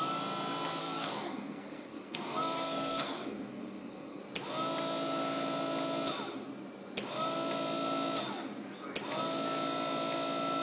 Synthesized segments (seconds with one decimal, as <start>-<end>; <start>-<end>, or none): 0.8-4.2

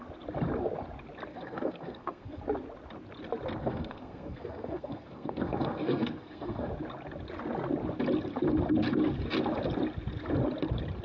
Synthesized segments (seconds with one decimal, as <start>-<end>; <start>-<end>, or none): 1.3-2.4; 3.6-6.7

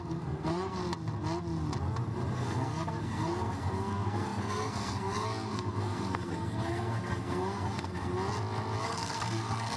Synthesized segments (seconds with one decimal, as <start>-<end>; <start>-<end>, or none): 0.0-0.8; 2.3-8.1; 8.8-9.8

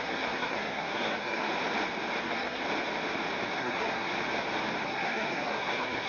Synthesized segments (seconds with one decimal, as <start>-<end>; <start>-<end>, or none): 0.0-1.5; 2.2-2.6; 3.5-4.1; 4.8-6.1

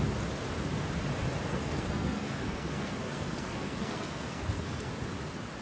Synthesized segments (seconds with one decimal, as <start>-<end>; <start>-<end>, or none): 1.5-4.9